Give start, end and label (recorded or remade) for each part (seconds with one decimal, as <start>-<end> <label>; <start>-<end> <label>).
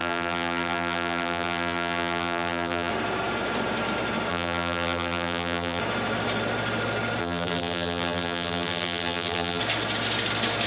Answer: 0.0-2.9 remade; 2.9-4.3 recorded; 4.3-5.8 remade; 5.8-7.2 recorded; 7.2-9.6 remade; 9.6-10.7 recorded